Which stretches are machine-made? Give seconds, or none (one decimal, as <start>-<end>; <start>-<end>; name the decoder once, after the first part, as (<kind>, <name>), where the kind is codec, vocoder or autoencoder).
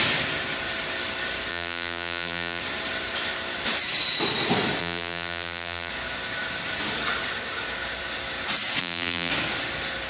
1.5-2.6 (vocoder, BigVGAN v2); 4.8-5.9; 8.8-9.3